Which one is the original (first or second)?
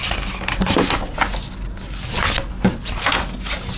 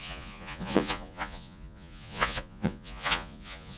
first